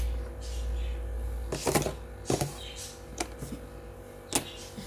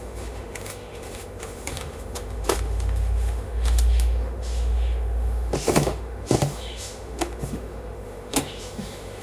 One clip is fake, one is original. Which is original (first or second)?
first